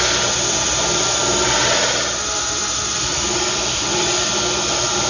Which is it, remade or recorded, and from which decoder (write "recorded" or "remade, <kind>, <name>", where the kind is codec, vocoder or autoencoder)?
recorded